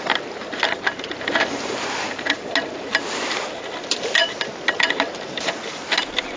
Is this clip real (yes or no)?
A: yes